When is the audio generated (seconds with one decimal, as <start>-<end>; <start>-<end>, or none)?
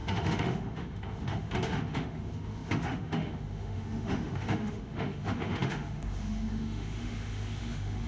0.0-8.1